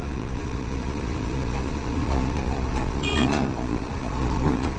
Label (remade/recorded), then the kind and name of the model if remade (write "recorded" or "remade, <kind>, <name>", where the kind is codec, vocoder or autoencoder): remade, vocoder, Vocos